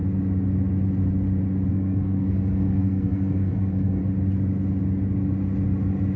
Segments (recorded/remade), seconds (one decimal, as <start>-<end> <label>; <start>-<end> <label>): 0.0-1.7 recorded; 1.7-4.0 remade; 4.0-6.2 recorded